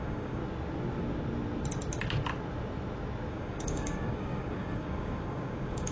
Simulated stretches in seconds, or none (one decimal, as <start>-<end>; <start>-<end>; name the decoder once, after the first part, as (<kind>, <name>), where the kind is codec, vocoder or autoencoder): 0.0-0.4 (codec, DAC); 3.3-5.9